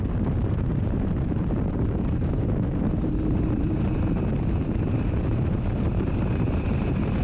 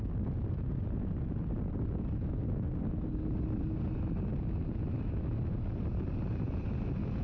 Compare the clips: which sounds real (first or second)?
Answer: second